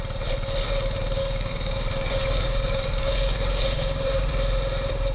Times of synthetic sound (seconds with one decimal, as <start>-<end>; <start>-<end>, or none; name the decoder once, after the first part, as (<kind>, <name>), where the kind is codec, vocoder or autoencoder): 1.2-4.3 (codec, DAC)